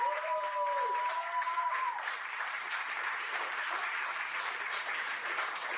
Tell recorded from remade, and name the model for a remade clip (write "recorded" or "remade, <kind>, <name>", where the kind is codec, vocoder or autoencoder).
remade, vocoder, BigVGAN v2